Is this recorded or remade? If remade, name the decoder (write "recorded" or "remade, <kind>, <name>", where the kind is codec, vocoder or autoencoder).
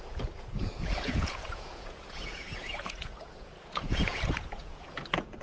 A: remade, vocoder, Vocos